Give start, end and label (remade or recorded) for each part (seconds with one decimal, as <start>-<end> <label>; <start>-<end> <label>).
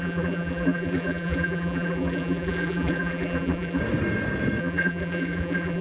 0.0-3.8 remade; 3.8-4.6 recorded; 4.6-5.8 remade